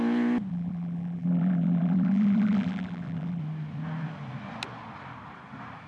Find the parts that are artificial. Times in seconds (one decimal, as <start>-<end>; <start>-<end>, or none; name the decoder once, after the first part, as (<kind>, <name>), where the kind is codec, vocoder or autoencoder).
0.5-3.4 (vocoder, BigVGAN v2)